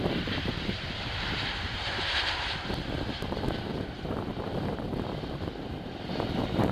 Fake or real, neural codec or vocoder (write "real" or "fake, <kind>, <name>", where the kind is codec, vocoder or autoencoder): fake, vocoder, BigVGAN v2